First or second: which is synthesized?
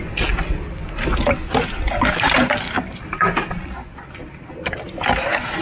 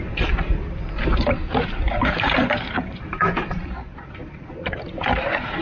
second